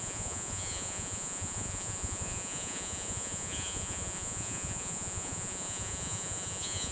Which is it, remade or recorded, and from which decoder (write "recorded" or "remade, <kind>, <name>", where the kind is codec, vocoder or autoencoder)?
remade, vocoder, Vocos